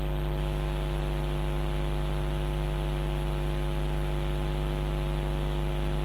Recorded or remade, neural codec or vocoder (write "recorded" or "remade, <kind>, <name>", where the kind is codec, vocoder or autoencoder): recorded